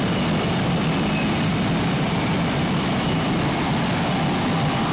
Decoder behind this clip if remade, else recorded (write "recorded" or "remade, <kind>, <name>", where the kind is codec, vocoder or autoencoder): recorded